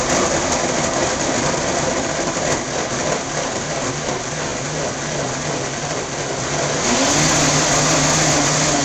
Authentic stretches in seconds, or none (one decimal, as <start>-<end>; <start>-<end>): 0.0-8.8